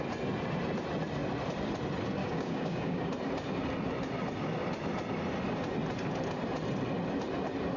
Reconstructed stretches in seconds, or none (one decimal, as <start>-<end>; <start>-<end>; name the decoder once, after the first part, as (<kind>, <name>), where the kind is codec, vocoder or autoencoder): 2.2-3.1 (codec, DAC)